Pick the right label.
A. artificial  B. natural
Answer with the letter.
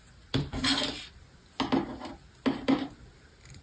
B